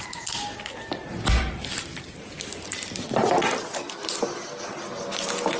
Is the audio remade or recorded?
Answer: recorded